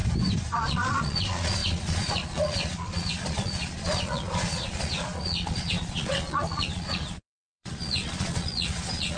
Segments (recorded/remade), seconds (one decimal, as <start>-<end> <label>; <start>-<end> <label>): 0.0-0.5 recorded; 0.5-9.2 remade